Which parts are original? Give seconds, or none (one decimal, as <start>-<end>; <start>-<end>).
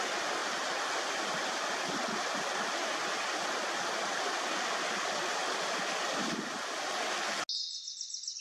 0.0-8.4